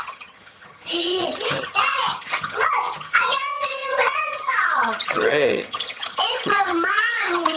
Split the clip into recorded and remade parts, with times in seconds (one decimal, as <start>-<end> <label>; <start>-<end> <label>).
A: 0.0-7.6 remade